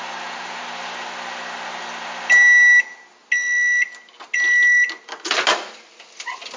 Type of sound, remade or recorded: recorded